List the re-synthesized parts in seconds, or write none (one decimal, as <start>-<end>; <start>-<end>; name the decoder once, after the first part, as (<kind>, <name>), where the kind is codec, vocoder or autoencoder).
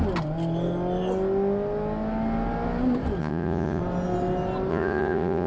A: 3.2-3.8 (vocoder, Vocos); 4.7-5.5